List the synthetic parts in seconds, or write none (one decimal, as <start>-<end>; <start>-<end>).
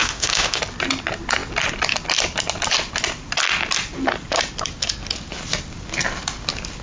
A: 0.0-0.6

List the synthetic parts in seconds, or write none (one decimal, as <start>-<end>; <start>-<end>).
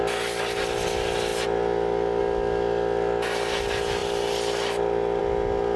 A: none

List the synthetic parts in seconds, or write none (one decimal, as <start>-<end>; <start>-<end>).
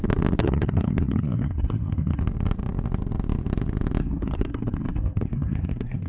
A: 0.4-2.2; 4.0-6.1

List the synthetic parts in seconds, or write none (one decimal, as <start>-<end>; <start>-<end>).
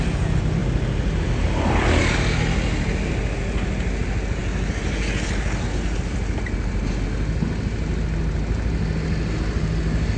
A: none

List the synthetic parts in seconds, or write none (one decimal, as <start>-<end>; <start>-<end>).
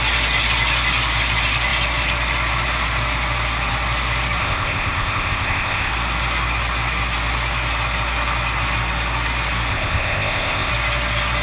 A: 4.4-5.9; 9.7-10.7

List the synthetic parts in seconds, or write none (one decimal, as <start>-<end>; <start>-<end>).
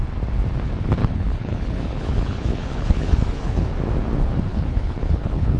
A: 1.0-3.7; 4.5-5.6